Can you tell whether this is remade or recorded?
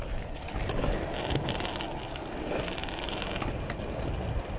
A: recorded